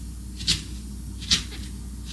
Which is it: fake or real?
real